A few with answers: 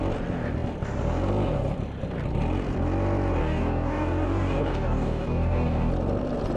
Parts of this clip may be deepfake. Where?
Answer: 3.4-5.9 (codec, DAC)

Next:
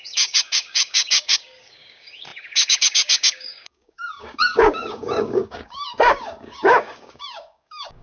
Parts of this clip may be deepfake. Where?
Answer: 0.0-8.0 (codec, DAC)

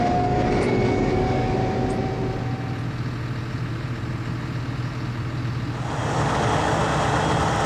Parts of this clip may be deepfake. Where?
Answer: 0.0-1.6 (codec, DAC); 6.1-6.8

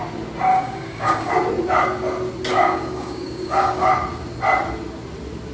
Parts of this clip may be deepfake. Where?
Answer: 0.5-1.3 (codec, DAC); 2.5-3.9

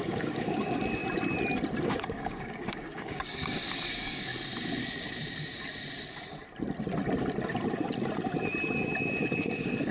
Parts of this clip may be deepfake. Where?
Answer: 0.0-1.0 (codec, DAC); 1.8-4.3; 9.1-9.9